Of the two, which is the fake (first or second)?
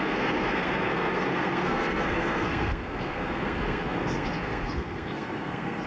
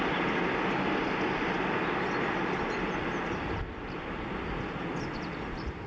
first